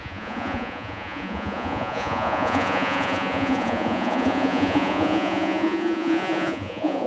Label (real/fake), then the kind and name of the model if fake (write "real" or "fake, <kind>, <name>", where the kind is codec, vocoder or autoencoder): fake, vocoder, Vocos